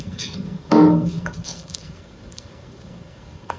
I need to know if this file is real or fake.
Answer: fake